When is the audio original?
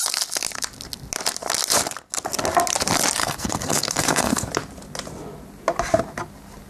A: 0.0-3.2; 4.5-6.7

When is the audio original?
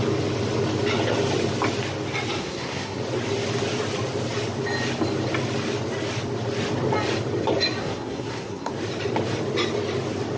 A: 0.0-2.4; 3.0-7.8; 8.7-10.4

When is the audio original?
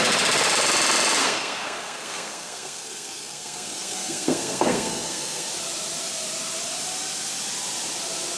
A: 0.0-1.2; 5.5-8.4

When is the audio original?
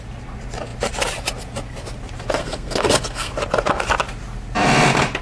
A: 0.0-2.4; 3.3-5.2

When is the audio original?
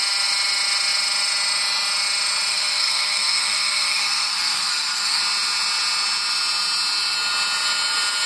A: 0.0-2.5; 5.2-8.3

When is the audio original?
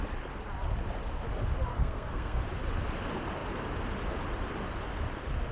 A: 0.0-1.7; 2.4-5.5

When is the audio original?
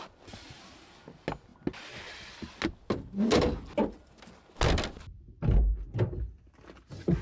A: 0.0-7.2